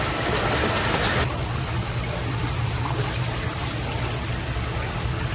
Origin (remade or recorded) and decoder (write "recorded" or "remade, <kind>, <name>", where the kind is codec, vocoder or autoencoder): recorded